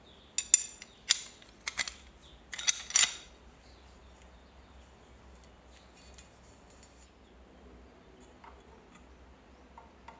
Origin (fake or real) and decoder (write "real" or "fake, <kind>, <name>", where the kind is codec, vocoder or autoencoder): real